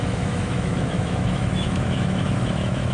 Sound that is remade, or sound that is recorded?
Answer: remade